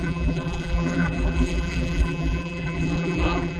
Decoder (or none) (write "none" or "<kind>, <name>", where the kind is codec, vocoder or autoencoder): vocoder, BigVGAN v2